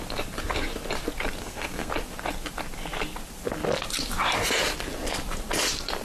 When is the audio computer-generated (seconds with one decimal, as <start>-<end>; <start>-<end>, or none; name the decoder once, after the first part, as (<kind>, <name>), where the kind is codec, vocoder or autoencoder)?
1.4-1.9 (codec, SNAC)